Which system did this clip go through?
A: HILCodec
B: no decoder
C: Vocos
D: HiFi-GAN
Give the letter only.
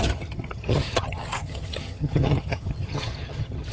D